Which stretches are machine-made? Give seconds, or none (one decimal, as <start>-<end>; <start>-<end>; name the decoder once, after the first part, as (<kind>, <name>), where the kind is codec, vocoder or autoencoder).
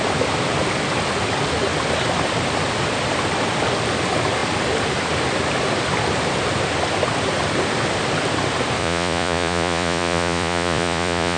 8.8-11.4 (vocoder, Vocos)